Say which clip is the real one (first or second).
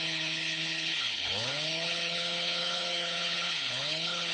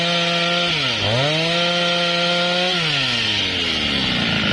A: second